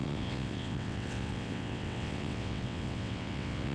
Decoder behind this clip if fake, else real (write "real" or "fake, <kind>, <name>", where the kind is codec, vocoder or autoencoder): fake, vocoder, WaveNeXt